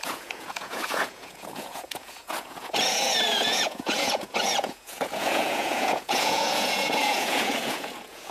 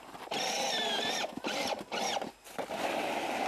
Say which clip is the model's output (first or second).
first